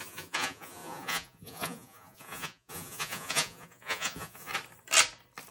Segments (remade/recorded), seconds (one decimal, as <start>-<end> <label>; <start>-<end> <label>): 0.0-4.5 remade; 4.5-5.5 recorded